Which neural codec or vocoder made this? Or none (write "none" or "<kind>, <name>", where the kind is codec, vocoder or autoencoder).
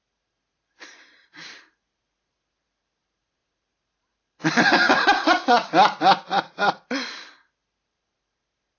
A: vocoder, BigVGAN v2